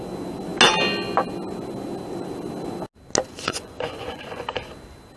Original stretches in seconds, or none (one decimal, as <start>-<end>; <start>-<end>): 0.0-3.3; 4.4-5.2